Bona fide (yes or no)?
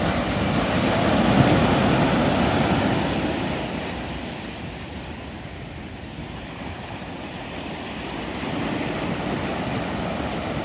yes